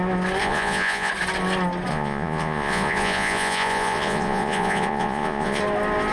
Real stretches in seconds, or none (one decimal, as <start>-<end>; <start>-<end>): 0.0-0.4; 1.1-1.9; 5.6-6.1